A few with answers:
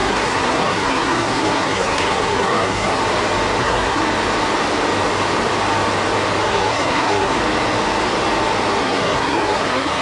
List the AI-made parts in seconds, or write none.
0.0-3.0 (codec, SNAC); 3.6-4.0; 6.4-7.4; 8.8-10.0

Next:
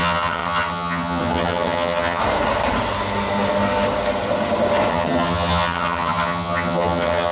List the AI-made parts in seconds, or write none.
0.0-2.2 (vocoder, HiFi-GAN); 4.9-7.3

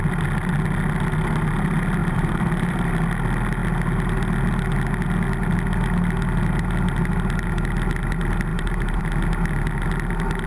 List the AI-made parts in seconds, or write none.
2.0-2.9 (vocoder, BigVGAN v2); 8.5-9.0

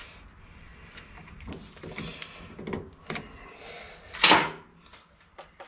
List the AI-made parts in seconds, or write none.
none

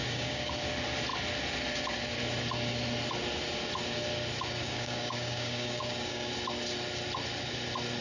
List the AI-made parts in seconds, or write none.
0.0-0.5 (codec, DAC); 4.6-6.3

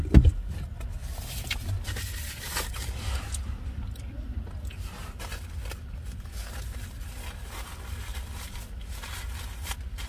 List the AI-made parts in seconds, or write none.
1.0-5.2 (vocoder, BigVGAN v2); 8.1-8.7

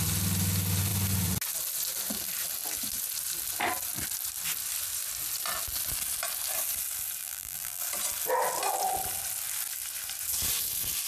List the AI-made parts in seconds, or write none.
7.2-7.8 (vocoder, BigVGAN v2)